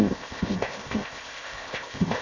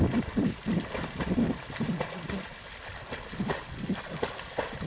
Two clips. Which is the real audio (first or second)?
second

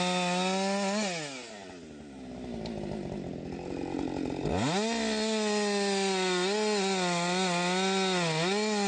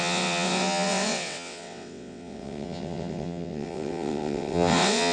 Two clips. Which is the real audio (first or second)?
first